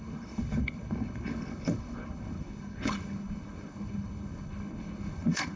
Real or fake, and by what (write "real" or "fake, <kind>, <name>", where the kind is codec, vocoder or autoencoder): fake, codec, HILCodec